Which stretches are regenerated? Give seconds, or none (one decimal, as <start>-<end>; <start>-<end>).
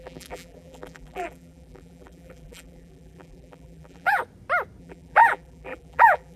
0.0-4.2; 4.8-6.4